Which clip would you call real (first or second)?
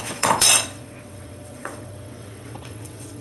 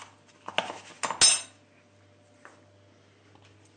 second